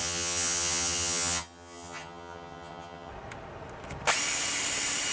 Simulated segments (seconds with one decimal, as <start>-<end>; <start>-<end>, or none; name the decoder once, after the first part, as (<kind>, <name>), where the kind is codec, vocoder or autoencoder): 0.0-3.1 (vocoder, HiFi-GAN)